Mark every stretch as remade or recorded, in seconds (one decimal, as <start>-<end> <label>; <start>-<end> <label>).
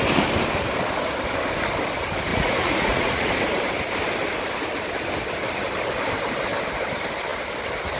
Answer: 0.0-2.3 recorded; 2.3-3.3 remade; 3.3-8.0 recorded